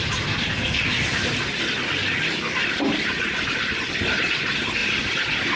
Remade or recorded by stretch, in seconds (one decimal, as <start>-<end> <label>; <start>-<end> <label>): 0.0-2.6 recorded; 2.6-3.2 remade; 3.2-4.8 recorded; 4.8-5.6 remade